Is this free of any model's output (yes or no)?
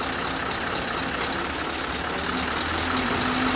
yes